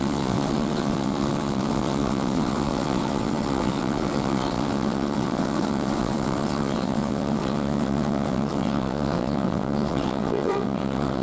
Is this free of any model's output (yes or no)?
no